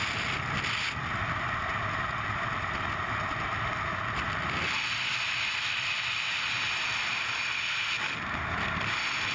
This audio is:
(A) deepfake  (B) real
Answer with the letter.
B